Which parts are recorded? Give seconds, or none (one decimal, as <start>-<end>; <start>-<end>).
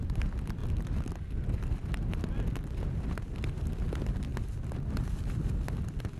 0.0-6.2